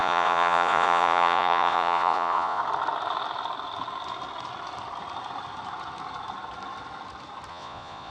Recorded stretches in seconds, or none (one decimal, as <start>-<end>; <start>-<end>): 2.6-7.5